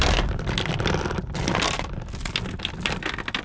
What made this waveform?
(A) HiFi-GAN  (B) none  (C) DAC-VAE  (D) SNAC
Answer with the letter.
B